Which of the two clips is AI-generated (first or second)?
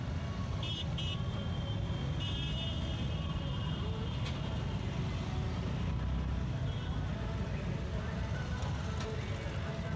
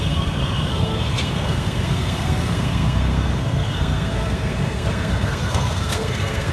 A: second